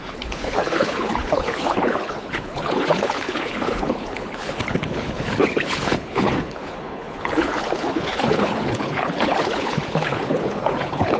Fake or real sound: fake